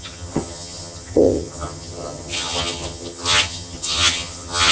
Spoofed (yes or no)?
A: yes